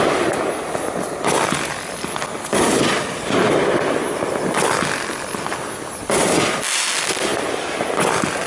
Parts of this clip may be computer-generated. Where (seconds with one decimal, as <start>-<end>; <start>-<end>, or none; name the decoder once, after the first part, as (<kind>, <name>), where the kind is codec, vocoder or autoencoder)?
none